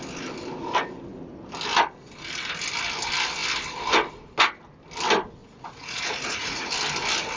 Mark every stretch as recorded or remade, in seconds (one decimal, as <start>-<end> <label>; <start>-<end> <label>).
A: 0.0-5.4 recorded; 5.4-6.7 remade; 6.7-7.4 recorded